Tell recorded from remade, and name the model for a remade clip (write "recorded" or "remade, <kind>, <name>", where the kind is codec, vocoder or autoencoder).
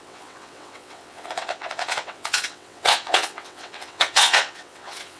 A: remade, vocoder, WaveNeXt